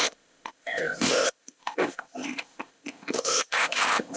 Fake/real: fake